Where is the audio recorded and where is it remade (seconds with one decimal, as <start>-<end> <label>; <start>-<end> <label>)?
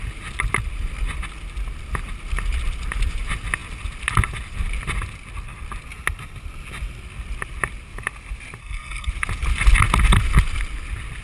0.0-8.6 recorded; 8.6-9.1 remade; 9.1-11.2 recorded